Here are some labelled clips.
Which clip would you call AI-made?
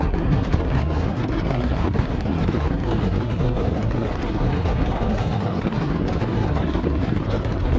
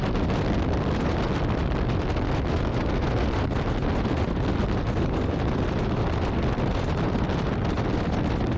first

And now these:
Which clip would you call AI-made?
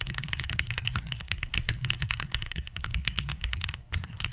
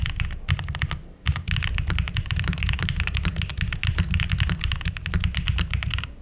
first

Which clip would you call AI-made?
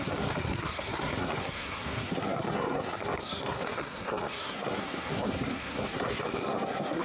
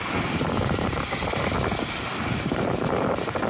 first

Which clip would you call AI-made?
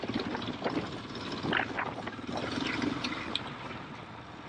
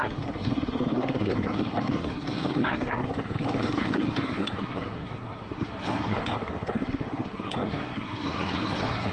second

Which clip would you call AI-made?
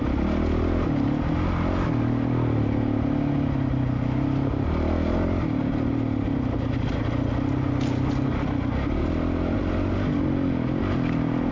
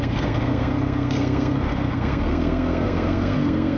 second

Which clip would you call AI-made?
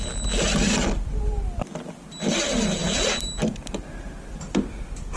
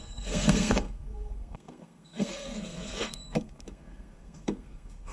second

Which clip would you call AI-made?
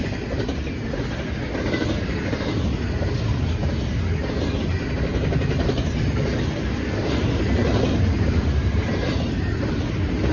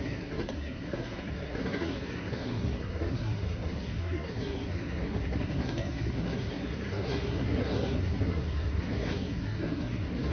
second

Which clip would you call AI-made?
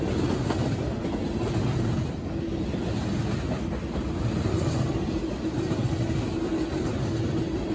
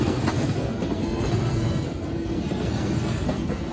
second